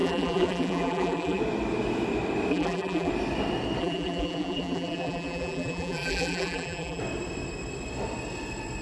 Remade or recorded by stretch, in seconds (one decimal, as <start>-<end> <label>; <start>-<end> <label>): 0.0-1.4 remade; 1.4-2.5 recorded; 2.5-3.1 remade; 3.1-3.8 recorded; 3.8-7.0 remade; 7.0-8.8 recorded